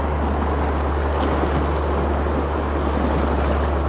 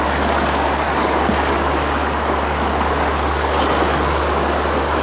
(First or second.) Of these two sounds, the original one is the first